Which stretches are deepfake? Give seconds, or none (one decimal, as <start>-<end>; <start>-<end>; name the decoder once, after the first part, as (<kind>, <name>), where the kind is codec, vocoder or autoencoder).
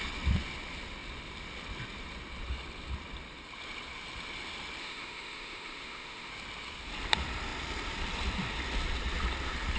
4.8-6.3 (autoencoder, DAC-VAE)